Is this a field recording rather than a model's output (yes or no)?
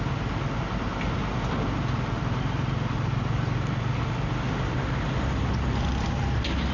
yes